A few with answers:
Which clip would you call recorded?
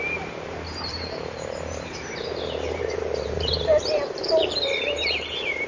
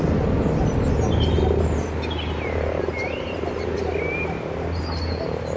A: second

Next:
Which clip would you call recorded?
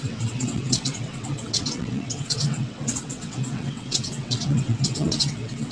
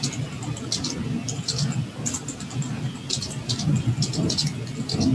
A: second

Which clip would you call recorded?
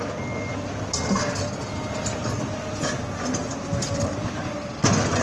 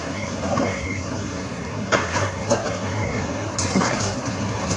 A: first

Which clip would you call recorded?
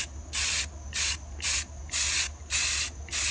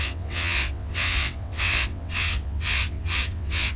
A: first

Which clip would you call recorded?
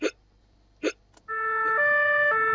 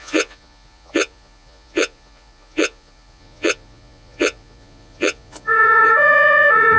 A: first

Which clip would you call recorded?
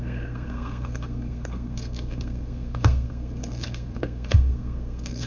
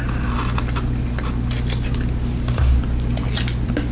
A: second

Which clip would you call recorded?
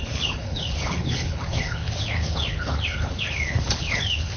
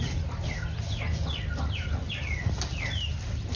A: second